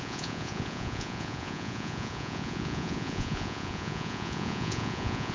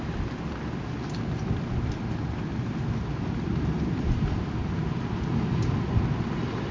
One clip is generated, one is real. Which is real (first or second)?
second